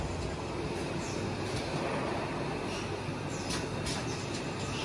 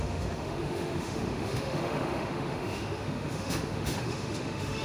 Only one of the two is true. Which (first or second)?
first